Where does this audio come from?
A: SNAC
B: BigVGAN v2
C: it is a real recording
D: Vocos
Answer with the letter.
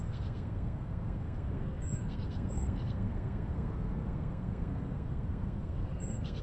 A